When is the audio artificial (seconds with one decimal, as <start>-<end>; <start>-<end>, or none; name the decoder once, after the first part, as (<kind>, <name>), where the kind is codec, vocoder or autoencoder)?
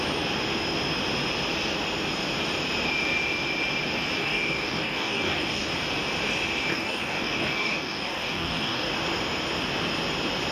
4.2-5.7 (codec, DAC); 6.7-8.9